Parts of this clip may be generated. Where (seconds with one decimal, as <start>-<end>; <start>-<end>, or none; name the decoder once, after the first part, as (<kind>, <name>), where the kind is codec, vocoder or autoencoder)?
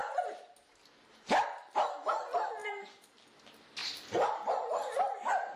none